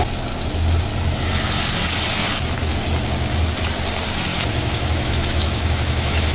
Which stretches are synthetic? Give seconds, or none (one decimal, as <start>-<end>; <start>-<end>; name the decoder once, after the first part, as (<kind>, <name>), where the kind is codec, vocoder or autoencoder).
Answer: 4.3-6.3 (autoencoder, DAC-VAE)